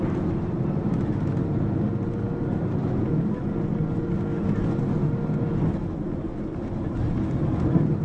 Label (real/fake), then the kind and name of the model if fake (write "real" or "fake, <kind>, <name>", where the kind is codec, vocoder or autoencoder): real